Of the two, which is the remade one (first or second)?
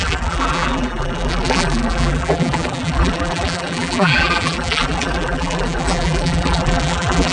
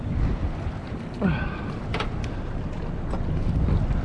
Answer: first